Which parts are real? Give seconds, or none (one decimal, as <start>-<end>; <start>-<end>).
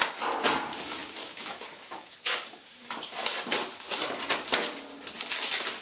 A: 0.0-1.0; 3.1-5.8